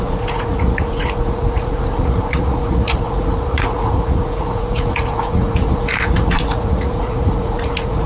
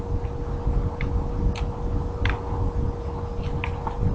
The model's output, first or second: first